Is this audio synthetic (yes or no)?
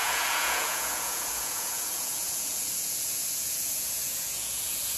yes